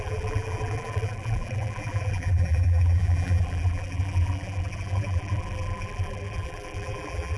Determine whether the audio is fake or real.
fake